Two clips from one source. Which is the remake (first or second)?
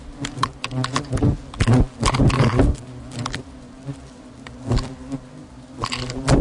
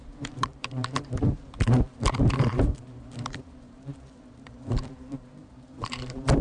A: second